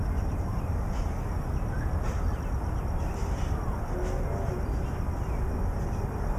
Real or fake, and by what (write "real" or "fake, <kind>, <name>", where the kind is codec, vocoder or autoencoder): real